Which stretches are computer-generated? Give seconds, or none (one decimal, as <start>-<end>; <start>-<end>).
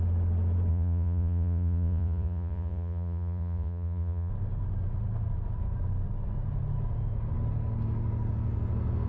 0.7-4.3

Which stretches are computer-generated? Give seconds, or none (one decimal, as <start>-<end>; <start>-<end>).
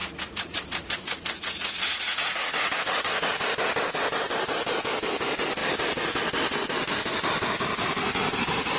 0.0-2.8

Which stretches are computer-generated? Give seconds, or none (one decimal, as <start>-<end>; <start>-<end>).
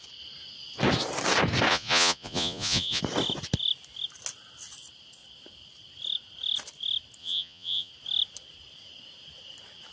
1.7-3.0; 7.2-7.9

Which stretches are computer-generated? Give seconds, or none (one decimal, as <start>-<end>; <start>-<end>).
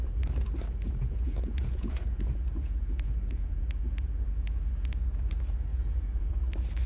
0.8-4.6; 5.7-6.3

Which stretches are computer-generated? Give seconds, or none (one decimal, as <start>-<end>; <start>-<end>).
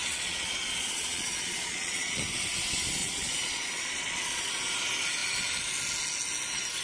0.0-2.2; 3.0-4.5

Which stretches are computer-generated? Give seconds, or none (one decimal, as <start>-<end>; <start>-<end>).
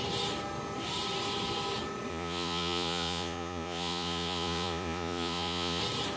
2.1-5.8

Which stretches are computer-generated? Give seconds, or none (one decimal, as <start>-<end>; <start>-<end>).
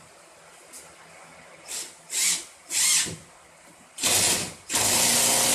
none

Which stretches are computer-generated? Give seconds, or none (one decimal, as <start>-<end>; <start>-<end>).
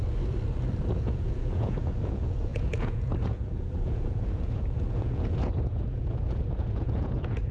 0.8-7.5